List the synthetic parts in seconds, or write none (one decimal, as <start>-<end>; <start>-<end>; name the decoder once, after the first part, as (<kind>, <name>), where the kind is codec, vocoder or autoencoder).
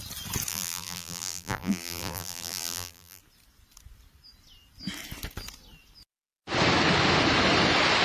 0.5-3.2 (vocoder, BigVGAN v2)